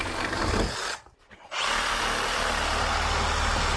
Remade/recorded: recorded